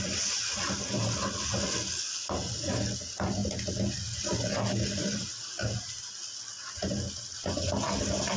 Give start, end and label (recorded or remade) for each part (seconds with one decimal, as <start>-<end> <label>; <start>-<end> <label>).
0.0-8.4 recorded